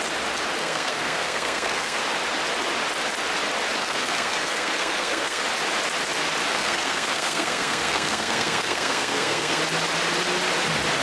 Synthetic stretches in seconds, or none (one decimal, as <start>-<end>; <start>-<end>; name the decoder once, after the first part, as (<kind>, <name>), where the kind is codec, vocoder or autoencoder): 0.6-2.0 (codec, SNAC); 3.8-5.4; 6.5-9.6